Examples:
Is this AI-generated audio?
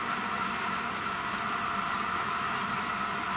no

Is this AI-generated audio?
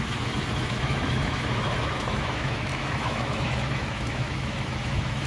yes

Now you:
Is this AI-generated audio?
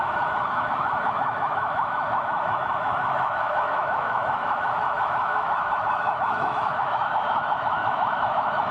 yes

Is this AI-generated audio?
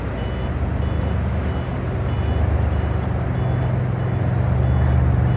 no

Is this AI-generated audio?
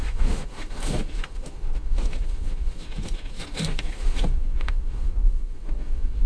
yes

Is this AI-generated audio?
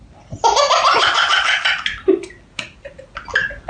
no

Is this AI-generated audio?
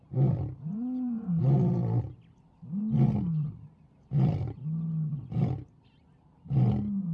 no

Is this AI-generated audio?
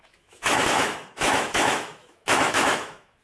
yes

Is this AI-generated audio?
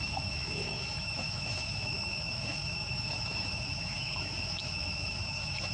yes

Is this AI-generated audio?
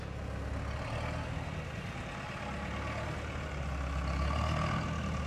no